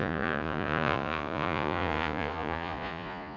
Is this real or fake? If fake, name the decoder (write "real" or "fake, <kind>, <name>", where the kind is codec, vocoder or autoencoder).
fake, vocoder, Vocos